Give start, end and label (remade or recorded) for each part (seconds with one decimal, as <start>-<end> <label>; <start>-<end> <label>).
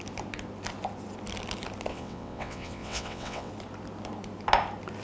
0.0-1.9 recorded; 1.9-3.5 remade; 3.5-5.0 recorded